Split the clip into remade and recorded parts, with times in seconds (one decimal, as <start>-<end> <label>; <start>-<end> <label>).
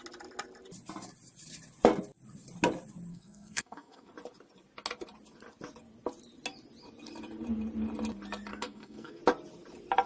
0.0-3.1 recorded; 3.1-4.1 remade; 4.1-8.5 recorded; 8.5-9.2 remade; 9.2-10.1 recorded